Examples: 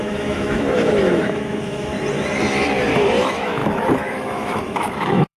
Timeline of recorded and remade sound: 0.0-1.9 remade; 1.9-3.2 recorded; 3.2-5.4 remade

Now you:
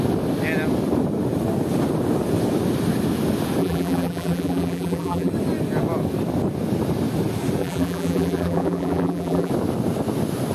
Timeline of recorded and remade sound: 0.0-3.6 recorded; 3.6-5.3 remade; 5.3-7.6 recorded; 7.6-9.5 remade; 9.5-10.5 recorded